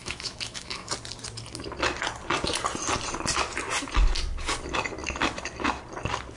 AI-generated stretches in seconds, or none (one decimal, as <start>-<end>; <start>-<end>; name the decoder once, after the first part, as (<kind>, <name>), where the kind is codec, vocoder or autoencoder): 0.0-0.9 (autoencoder, DAC-VAE)